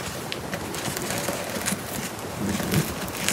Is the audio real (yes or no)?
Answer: yes